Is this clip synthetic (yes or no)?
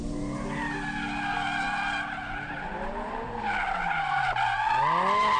no